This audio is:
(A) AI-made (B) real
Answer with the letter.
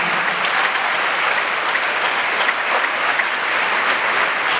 B